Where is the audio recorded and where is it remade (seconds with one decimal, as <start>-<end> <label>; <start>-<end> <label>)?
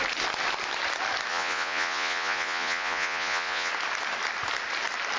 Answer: 0.0-1.3 recorded; 1.3-3.7 remade; 3.7-5.2 recorded